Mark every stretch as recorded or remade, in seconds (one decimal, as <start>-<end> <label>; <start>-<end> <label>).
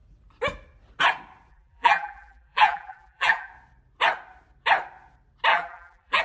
0.0-1.5 recorded; 1.5-3.5 remade; 3.5-5.5 recorded; 5.5-6.2 remade